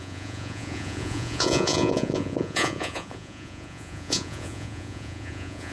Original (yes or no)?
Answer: no